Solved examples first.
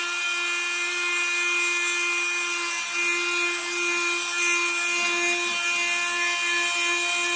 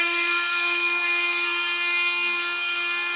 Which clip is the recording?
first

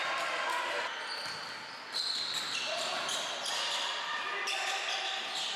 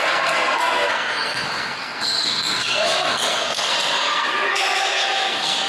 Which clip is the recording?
first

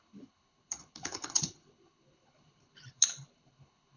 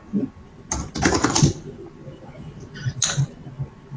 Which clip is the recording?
second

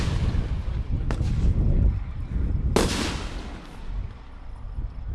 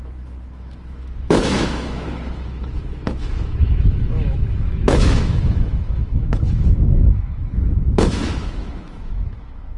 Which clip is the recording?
first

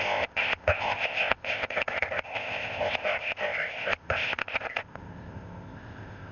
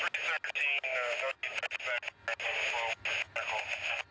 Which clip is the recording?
second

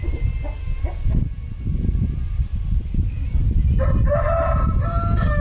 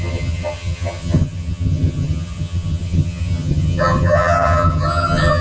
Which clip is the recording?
first